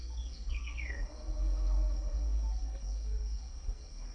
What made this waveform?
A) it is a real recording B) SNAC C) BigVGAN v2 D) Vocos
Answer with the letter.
B